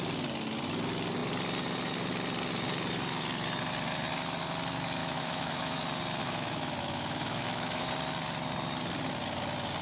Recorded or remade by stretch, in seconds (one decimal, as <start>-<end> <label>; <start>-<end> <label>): 0.0-5.0 recorded; 5.0-5.8 remade; 5.8-6.2 recorded; 6.2-7.9 remade; 7.9-9.8 recorded